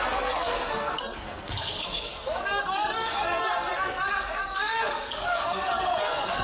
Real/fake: fake